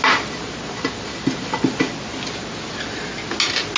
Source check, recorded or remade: recorded